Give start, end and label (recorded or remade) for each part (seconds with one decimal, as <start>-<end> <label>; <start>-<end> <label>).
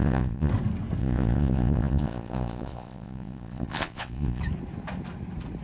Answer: 0.0-0.5 remade; 0.5-1.0 recorded; 1.0-4.4 remade; 4.4-5.6 recorded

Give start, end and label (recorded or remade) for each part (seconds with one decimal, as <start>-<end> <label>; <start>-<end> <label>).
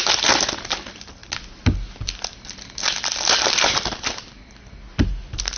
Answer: 0.0-5.6 recorded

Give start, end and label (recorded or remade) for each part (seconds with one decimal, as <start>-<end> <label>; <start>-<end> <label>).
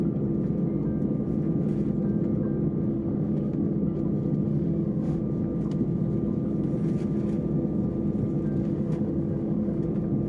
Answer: 0.0-2.9 recorded; 2.9-3.8 remade; 3.8-4.5 recorded; 4.5-5.2 remade; 5.2-8.6 recorded; 8.6-9.8 remade; 9.8-10.3 recorded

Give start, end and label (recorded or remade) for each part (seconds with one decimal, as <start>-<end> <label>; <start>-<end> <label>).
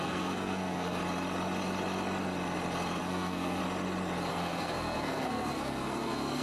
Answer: 0.0-1.0 remade; 1.0-3.0 recorded; 3.0-3.6 remade; 3.6-4.3 recorded; 4.3-6.4 remade